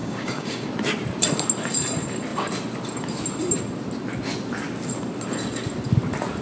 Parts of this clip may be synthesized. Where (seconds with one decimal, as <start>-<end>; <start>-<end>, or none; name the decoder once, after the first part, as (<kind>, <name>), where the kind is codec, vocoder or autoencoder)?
0.0-0.7 (codec, DAC)